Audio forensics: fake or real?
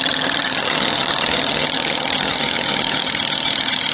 fake